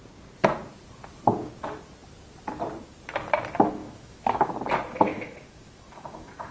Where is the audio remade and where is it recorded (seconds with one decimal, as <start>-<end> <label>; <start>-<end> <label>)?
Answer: 0.0-3.8 recorded; 3.8-4.5 remade; 4.5-5.1 recorded; 5.1-6.5 remade